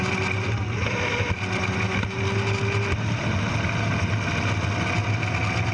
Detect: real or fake real